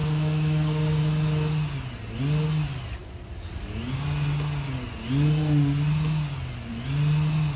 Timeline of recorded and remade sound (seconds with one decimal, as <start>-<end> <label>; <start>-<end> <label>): 0.0-1.0 remade; 1.0-7.6 recorded